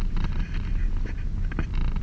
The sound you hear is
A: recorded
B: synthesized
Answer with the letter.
A